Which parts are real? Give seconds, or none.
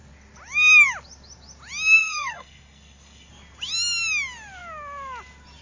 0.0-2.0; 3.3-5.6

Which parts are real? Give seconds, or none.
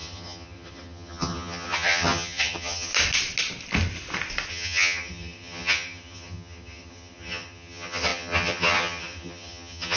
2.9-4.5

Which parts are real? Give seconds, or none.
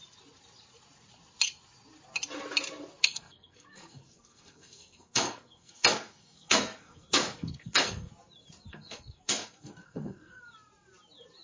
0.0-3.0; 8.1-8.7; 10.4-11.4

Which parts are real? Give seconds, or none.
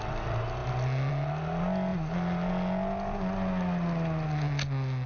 0.0-5.1